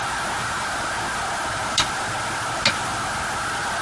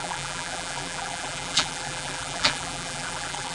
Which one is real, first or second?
first